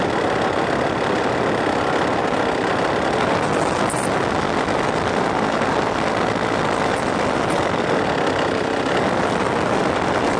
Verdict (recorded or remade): recorded